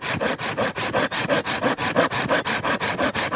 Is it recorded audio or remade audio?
remade